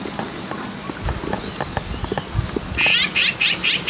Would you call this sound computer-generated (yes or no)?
no